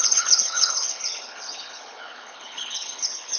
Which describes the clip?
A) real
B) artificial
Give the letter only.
B